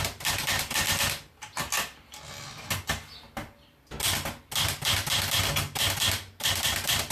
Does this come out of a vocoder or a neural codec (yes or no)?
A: no